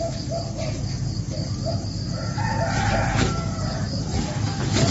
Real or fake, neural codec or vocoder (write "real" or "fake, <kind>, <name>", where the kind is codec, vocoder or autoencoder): real